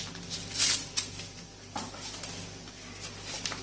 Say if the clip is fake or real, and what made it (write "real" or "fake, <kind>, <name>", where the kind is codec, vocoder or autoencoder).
real